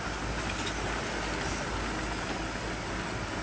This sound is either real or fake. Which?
real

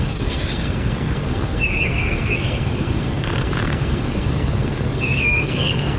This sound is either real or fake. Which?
fake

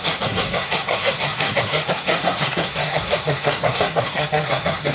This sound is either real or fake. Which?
fake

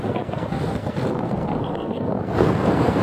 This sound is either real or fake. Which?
fake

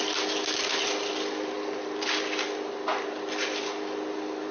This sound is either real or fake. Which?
real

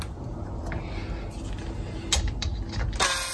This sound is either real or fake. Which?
real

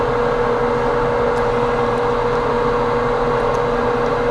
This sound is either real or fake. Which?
real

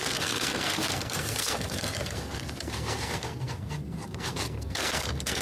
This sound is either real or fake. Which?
fake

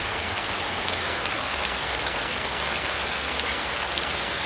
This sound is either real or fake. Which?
fake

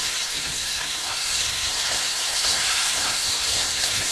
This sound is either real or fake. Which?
fake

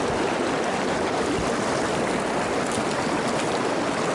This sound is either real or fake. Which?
real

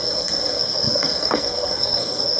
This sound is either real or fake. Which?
fake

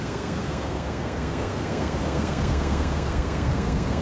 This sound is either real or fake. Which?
fake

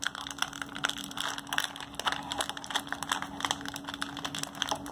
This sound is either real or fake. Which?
real